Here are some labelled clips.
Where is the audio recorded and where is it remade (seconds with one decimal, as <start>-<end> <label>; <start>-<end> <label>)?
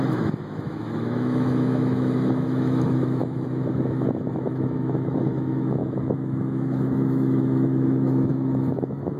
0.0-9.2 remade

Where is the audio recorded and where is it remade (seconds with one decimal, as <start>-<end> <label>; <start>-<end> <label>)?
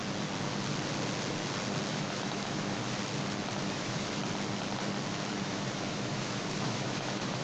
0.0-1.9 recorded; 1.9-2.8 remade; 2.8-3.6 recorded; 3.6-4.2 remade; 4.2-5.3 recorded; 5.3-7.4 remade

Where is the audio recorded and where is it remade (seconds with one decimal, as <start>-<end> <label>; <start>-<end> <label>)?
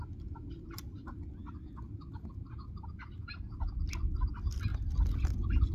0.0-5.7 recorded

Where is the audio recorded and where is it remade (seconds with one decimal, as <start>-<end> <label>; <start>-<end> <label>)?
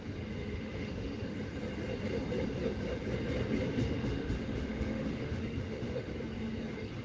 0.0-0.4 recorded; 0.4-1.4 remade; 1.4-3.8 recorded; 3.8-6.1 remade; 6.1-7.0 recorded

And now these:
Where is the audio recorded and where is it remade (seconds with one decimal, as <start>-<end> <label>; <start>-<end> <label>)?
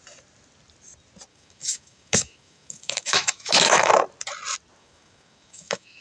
0.0-1.3 recorded; 1.3-3.9 remade; 3.9-4.8 recorded; 4.8-6.0 remade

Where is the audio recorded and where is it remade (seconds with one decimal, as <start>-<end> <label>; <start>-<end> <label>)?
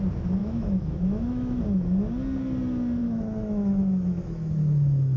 0.0-0.4 recorded; 0.4-1.6 remade; 1.6-3.0 recorded; 3.0-5.2 remade